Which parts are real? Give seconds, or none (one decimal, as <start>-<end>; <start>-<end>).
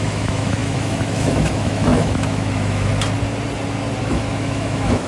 2.9-4.0